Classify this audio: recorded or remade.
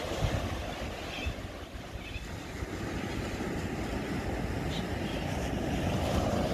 recorded